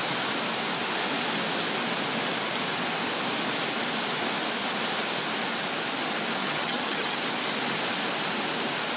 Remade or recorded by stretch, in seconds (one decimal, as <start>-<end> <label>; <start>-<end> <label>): 0.0-6.4 recorded; 6.4-7.2 remade; 7.2-9.0 recorded